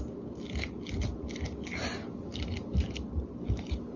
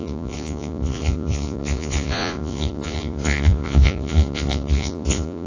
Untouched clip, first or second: first